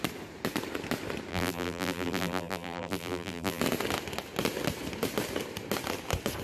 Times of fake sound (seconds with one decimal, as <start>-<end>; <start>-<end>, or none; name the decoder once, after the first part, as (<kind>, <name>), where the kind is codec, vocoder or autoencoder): 1.3-3.6 (vocoder, BigVGAN v2)